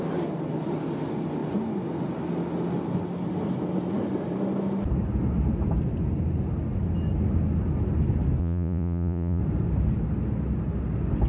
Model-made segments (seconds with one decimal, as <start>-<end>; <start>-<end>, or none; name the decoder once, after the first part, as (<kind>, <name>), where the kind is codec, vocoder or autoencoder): 8.4-9.4 (vocoder, Vocos)